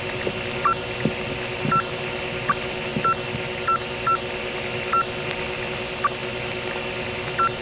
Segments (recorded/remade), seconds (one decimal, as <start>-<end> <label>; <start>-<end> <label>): 0.0-7.6 recorded